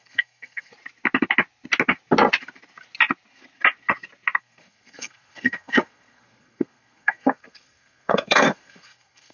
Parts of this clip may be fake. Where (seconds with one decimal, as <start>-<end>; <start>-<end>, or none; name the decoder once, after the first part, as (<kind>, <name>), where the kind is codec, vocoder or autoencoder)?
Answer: 0.0-0.7 (codec, SNAC); 4.4-9.3